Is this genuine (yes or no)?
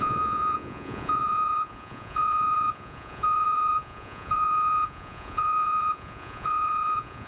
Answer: no